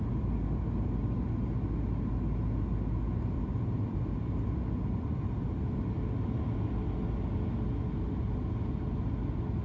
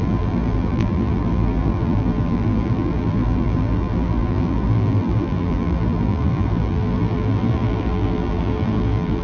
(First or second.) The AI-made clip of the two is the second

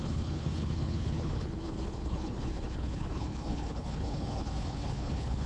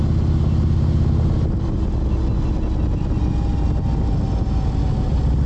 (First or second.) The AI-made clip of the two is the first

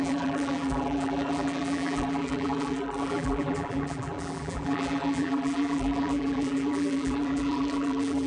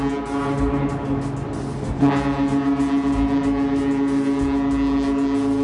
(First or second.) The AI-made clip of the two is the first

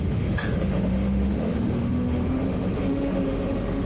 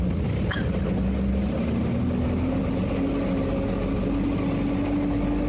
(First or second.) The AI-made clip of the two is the first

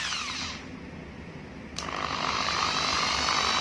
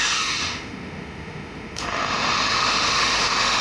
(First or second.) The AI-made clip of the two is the second